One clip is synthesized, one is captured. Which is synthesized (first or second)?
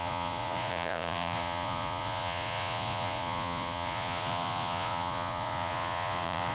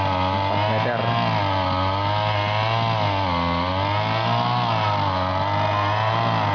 first